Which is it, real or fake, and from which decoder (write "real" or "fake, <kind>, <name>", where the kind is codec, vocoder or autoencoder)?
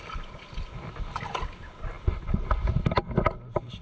real